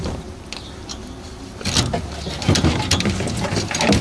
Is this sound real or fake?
real